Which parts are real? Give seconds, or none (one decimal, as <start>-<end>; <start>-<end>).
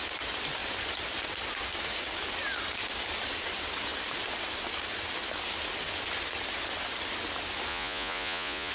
0.0-7.7